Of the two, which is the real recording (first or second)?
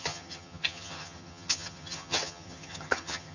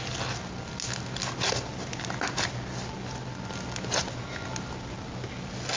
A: second